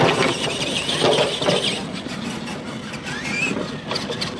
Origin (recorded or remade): recorded